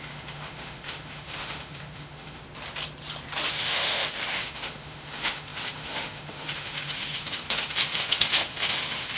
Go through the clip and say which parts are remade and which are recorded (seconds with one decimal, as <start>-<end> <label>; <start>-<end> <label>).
0.0-2.4 remade; 2.4-3.5 recorded; 3.5-9.2 remade